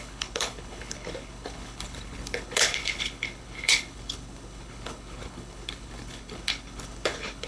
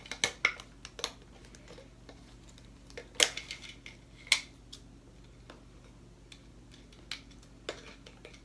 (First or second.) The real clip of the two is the second